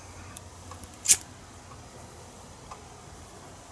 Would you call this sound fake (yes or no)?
no